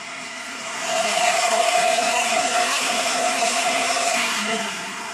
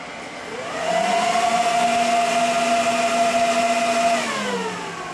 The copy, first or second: first